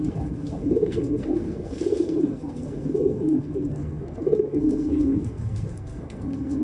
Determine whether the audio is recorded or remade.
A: remade